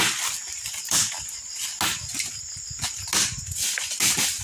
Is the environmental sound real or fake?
real